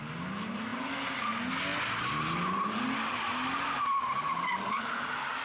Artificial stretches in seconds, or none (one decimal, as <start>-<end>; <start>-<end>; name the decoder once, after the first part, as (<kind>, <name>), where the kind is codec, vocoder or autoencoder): none